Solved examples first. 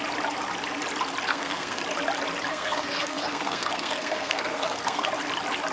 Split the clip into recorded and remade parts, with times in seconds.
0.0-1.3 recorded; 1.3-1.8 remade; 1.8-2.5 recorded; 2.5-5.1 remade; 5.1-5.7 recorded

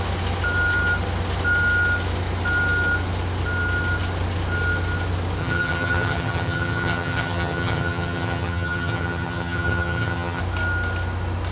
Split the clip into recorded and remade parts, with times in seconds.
0.0-5.4 recorded; 5.4-10.4 remade; 10.4-11.5 recorded

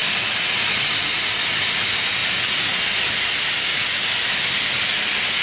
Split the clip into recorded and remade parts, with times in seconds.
0.0-5.4 recorded

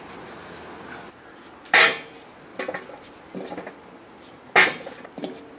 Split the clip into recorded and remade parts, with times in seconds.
0.0-5.6 recorded